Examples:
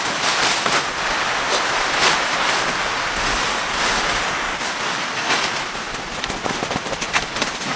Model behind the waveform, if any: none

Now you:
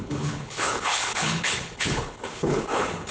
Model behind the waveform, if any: codec, HILCodec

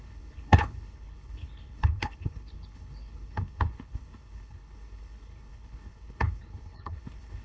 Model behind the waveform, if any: codec, HILCodec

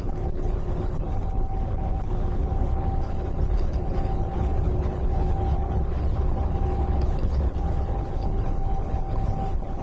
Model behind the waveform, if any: codec, HILCodec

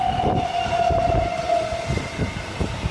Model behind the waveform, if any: none